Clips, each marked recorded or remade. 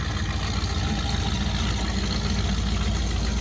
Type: recorded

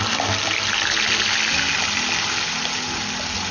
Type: recorded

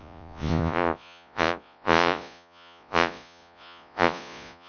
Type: remade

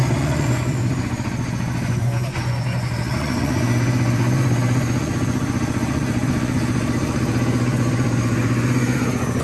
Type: remade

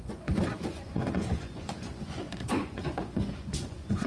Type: remade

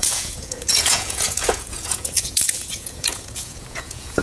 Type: remade